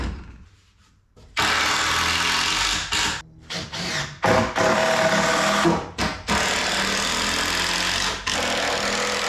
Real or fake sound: real